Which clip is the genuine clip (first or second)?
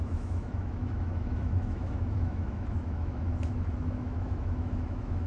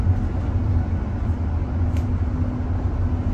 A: second